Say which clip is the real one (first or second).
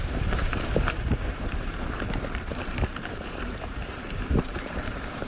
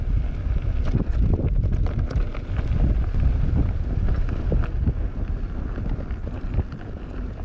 second